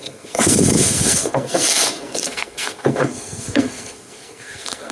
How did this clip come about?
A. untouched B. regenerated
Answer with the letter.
B